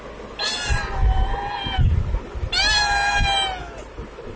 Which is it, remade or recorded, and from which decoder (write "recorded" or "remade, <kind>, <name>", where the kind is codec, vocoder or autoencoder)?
recorded